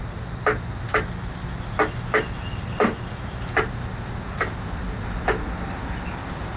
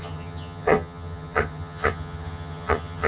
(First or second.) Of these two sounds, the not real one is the second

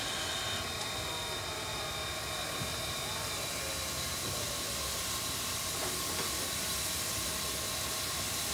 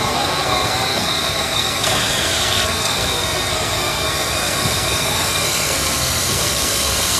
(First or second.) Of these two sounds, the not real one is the second